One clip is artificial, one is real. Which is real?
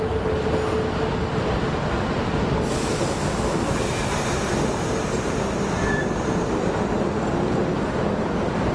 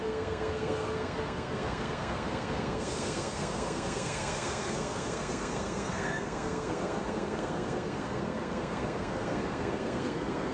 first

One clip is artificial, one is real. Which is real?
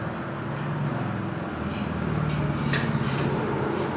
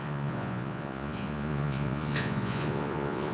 first